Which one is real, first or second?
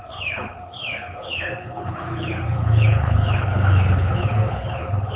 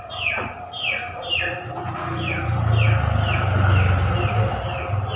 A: second